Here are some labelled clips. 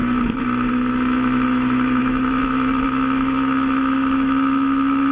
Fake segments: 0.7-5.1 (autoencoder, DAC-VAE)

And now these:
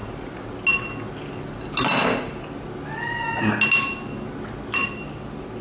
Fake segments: none

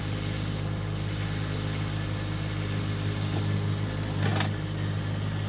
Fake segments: none